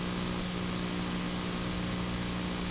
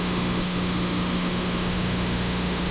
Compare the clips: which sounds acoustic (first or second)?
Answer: first